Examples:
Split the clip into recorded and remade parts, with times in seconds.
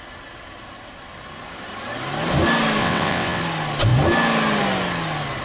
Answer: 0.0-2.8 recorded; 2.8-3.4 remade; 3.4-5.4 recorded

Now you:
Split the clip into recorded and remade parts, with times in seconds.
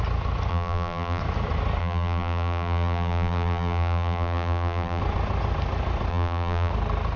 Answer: 0.0-0.5 recorded; 0.5-1.2 remade; 1.2-1.8 recorded; 1.8-5.0 remade; 5.0-6.1 recorded; 6.1-6.7 remade; 6.7-7.2 recorded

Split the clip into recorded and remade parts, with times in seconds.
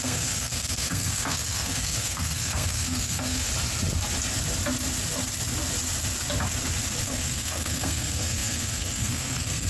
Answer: 0.0-3.5 remade; 3.5-7.0 recorded; 7.0-9.7 remade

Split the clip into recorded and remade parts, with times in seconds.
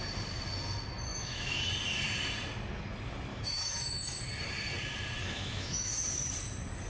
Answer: 0.0-1.1 recorded; 1.1-1.7 remade; 1.7-3.3 recorded; 3.3-4.2 remade; 4.2-5.2 recorded; 5.2-5.9 remade; 5.9-6.9 recorded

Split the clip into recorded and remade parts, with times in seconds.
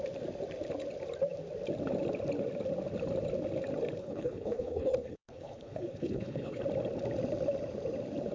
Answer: 0.0-4.0 recorded; 4.0-6.6 remade; 6.6-8.3 recorded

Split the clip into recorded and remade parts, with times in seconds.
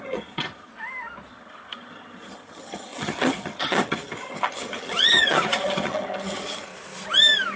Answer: 0.0-0.7 remade; 0.7-1.3 recorded; 1.3-6.7 remade; 6.7-7.6 recorded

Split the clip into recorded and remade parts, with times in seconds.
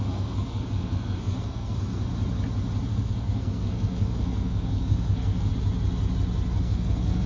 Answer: 0.0-2.1 remade; 2.1-2.9 recorded; 2.9-5.5 remade; 5.5-6.6 recorded; 6.6-7.3 remade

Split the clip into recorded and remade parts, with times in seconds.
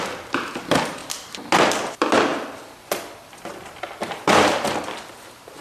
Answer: 0.0-5.6 recorded